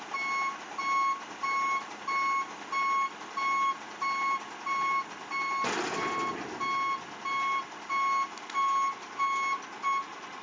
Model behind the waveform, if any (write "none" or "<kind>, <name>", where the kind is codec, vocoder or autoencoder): none